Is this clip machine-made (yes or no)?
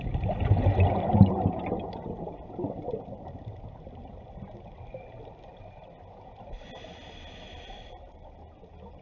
no